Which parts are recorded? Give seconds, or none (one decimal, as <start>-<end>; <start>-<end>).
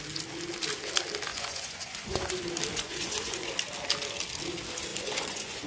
0.0-1.3; 2.3-2.7; 3.5-4.9